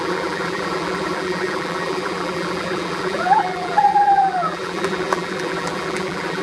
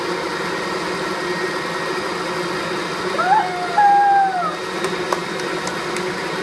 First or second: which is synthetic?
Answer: first